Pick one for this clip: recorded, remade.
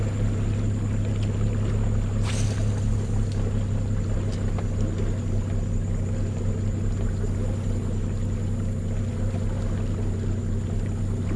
recorded